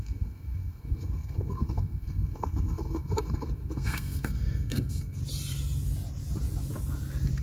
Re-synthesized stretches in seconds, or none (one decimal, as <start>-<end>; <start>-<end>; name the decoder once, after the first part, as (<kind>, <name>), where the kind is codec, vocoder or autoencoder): 0.0-5.2 (codec, SNAC)